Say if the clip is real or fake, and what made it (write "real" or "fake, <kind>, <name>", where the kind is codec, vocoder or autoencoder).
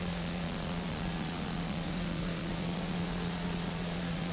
fake, vocoder, Vocos